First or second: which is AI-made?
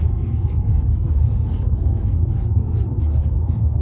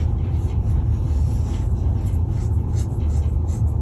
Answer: first